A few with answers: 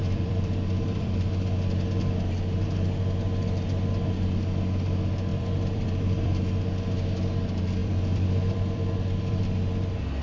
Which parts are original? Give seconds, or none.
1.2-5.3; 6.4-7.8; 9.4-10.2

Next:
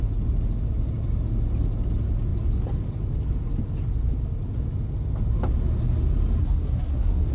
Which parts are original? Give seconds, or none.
0.0-6.4

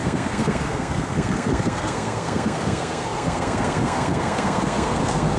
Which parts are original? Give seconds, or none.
none

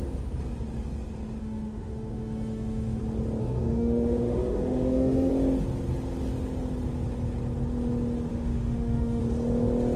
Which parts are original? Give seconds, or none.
0.0-1.4; 3.0-3.4; 5.3-8.3; 9.2-10.0

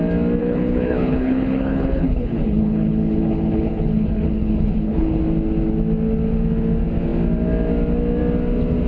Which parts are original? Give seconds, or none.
0.0-0.4; 5.2-8.9

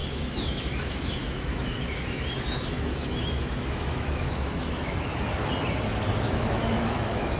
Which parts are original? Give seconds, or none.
5.1-6.2

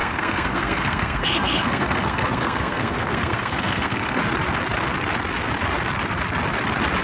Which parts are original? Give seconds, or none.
4.2-7.0

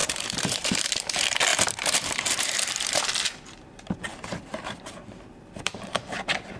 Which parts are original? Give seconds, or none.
0.9-1.5; 3.0-4.1